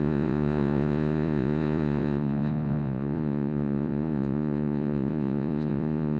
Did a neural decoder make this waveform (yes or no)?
yes